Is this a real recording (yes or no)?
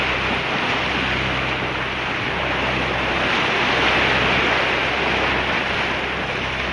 yes